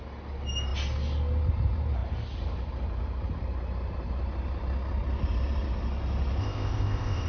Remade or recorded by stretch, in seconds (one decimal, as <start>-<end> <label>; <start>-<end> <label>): 0.0-6.4 recorded; 6.4-7.3 remade